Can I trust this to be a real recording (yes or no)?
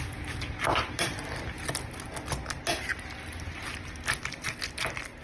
yes